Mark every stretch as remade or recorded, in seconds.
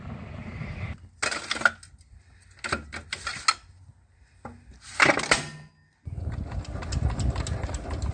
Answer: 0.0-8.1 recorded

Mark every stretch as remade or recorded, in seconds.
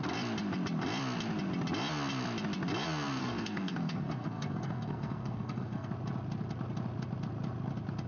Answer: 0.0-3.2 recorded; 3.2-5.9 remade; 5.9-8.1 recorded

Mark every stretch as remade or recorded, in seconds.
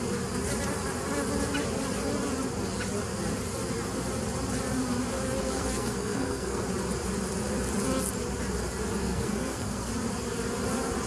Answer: 0.0-5.4 recorded; 5.4-6.6 remade; 6.6-9.0 recorded; 9.0-9.9 remade; 9.9-11.1 recorded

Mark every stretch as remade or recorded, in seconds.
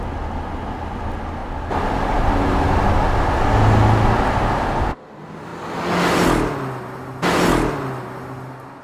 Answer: 0.0-1.4 recorded; 1.4-3.1 remade; 3.1-8.8 recorded